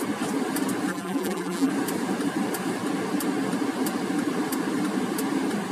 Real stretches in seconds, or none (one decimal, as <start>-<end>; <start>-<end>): 0.0-0.9; 1.7-5.7